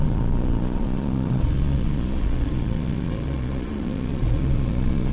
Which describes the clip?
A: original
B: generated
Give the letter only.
B